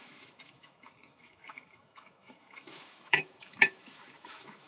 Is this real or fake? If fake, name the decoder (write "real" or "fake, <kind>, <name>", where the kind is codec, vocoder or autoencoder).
fake, autoencoder, DAC-VAE